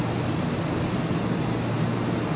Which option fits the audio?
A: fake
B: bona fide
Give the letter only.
B